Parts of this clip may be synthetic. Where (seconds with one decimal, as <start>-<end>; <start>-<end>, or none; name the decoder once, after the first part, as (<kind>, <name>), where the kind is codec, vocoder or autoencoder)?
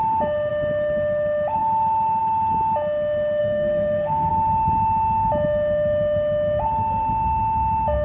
3.4-4.3 (codec, SNAC)